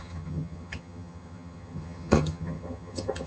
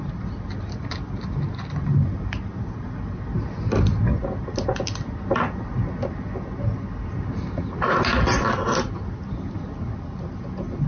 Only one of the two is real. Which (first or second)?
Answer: second